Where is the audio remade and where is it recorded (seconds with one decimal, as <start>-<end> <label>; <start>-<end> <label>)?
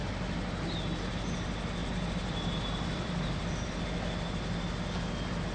0.0-1.8 recorded; 1.8-3.8 remade; 3.8-5.5 recorded